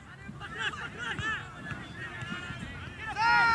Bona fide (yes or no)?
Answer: yes